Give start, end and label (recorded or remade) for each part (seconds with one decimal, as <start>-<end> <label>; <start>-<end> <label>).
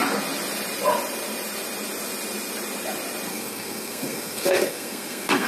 0.0-3.3 recorded; 3.3-5.5 remade